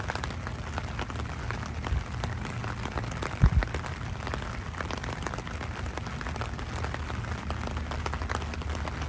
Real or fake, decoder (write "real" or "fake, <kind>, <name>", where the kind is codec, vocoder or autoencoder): real